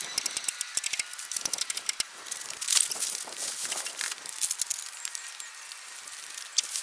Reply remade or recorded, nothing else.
recorded